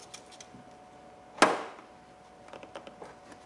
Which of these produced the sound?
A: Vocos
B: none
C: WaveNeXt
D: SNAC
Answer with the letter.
B